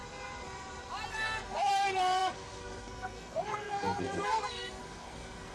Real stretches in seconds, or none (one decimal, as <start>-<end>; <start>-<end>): 0.0-1.1